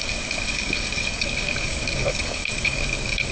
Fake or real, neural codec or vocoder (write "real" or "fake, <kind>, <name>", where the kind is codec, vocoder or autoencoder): fake, codec, DAC